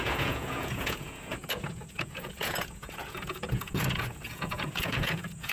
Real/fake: fake